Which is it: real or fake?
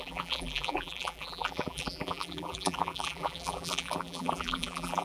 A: fake